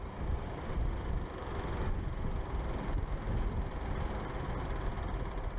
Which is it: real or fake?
fake